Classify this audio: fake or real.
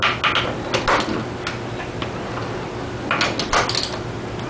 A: real